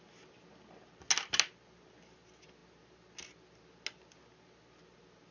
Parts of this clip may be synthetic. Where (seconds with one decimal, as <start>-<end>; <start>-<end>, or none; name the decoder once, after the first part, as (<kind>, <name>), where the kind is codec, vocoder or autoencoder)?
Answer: none